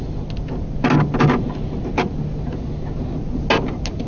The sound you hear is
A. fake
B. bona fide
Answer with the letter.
B